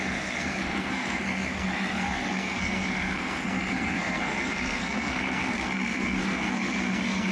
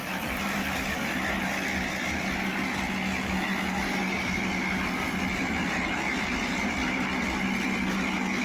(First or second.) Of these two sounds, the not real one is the first